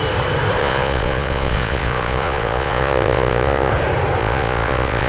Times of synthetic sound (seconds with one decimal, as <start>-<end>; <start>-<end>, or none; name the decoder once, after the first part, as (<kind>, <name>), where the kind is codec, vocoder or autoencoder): 0.6-3.7 (vocoder, Vocos); 4.2-5.1